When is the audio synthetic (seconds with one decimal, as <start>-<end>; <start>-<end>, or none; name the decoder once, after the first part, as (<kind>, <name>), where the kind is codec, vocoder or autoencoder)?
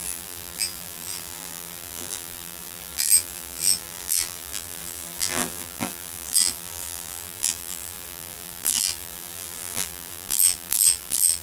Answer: 0.0-11.4 (vocoder, BigVGAN v2)